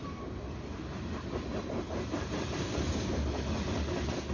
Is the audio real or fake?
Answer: real